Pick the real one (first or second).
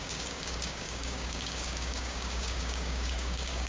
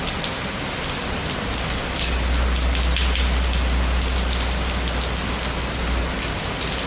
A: second